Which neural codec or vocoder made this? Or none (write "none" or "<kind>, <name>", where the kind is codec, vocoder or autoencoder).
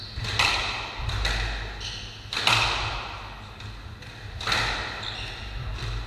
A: none